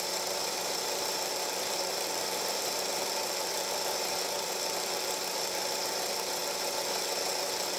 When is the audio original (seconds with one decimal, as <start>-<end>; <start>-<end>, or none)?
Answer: 6.4-7.8